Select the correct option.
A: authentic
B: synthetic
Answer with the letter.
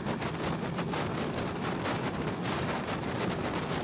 A